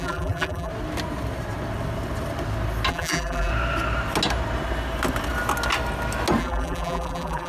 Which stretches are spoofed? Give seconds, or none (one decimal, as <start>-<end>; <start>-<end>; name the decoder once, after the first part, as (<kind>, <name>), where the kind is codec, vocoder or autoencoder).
0.0-0.7 (vocoder, BigVGAN v2); 2.9-3.5; 6.4-7.5